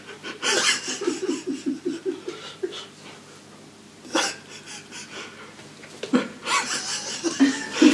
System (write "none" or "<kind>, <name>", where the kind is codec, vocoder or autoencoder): none